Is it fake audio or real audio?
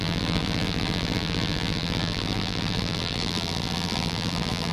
fake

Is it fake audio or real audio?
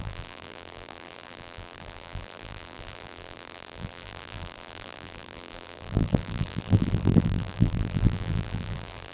fake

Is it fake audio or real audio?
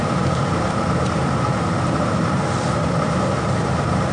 fake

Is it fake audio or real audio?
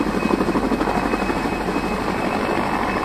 real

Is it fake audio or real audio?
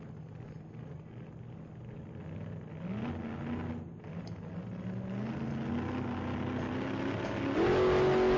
real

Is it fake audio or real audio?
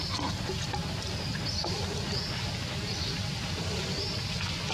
real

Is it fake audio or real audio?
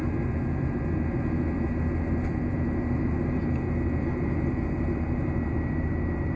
fake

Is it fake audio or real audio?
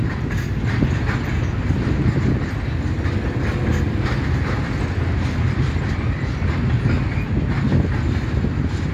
real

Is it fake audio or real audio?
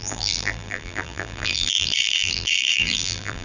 fake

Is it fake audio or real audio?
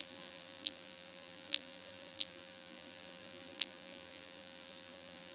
fake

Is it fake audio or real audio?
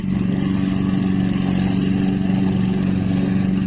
real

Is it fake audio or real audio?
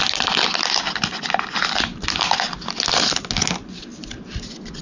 real